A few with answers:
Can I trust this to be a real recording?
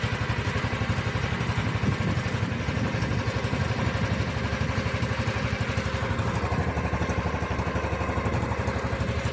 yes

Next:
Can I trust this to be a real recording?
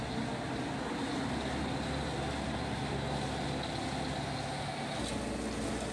yes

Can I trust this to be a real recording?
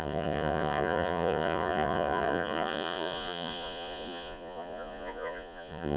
no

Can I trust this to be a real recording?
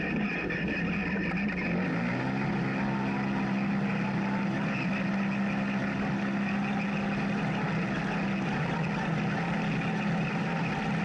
yes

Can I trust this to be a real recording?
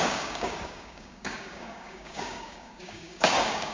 no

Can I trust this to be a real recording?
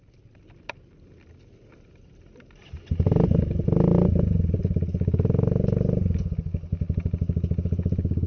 yes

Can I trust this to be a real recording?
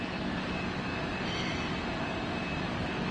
yes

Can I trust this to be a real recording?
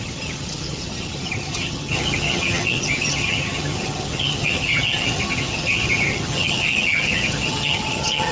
no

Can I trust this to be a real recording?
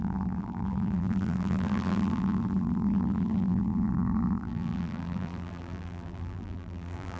no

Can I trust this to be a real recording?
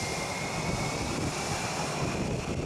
yes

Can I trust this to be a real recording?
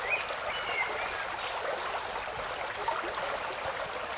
yes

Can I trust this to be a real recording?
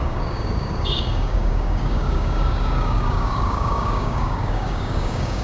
no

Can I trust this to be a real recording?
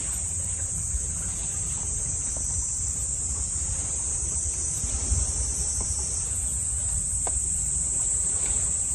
no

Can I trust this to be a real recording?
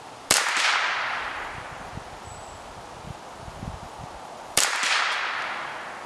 yes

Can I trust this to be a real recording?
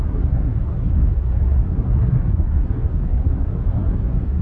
no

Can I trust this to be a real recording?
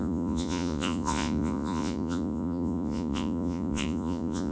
no